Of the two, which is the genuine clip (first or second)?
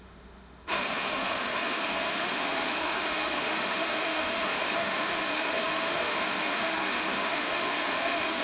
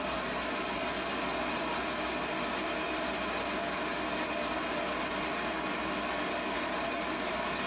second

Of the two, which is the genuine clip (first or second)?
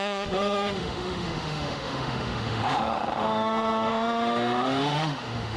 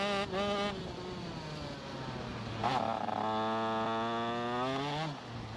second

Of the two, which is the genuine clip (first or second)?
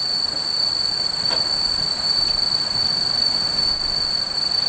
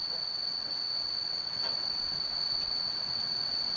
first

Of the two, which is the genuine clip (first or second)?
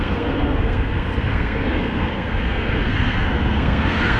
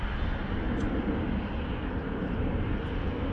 second